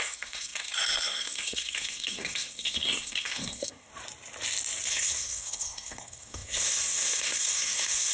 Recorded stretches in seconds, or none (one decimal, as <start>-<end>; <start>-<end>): 3.9-4.9